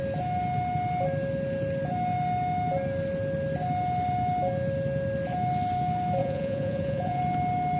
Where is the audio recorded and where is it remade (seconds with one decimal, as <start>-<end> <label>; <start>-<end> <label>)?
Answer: 0.0-6.2 recorded; 6.2-7.2 remade; 7.2-7.8 recorded